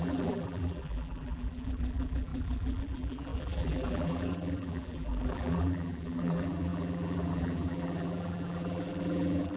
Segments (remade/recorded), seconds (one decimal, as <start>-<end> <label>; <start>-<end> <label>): 0.0-9.6 remade